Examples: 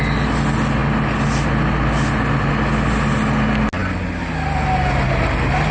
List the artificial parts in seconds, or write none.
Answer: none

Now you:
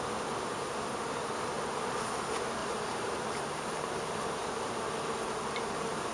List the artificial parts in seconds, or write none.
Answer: 2.6-6.1 (vocoder, BigVGAN v2)

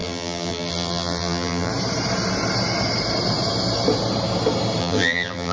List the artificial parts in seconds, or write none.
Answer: 0.0-1.7 (vocoder, BigVGAN v2); 4.8-5.5

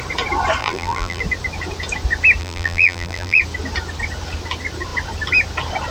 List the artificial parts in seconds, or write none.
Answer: 0.6-1.2 (vocoder, BigVGAN v2); 2.4-3.4

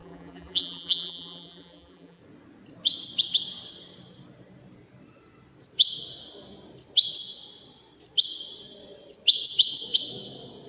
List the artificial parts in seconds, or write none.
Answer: 0.0-2.2 (vocoder, BigVGAN v2)

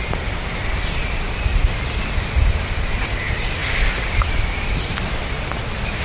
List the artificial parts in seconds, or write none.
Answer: 3.6-5.2 (vocoder, BigVGAN v2)

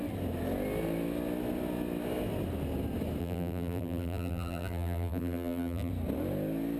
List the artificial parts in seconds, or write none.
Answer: 3.2-5.9 (vocoder, BigVGAN v2)